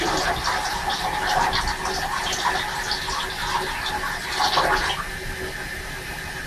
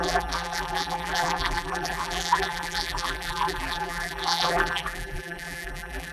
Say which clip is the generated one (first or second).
second